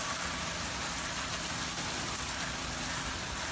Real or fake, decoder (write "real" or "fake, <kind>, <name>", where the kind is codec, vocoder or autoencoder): real